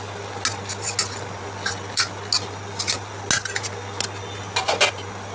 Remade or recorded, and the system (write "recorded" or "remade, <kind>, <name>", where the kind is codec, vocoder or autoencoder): recorded